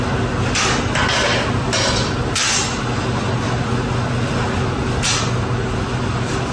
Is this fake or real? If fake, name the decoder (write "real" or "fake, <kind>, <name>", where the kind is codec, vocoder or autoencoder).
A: real